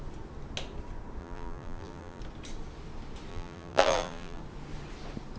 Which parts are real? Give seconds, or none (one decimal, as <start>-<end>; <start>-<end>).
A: 0.0-1.2; 2.2-3.3; 4.4-5.4